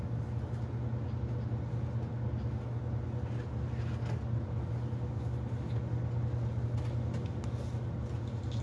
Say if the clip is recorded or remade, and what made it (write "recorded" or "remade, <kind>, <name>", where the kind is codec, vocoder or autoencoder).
recorded